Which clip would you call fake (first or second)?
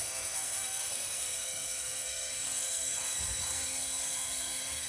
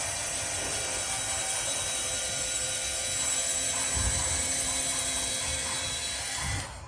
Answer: first